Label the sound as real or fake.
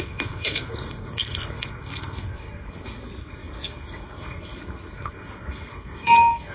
fake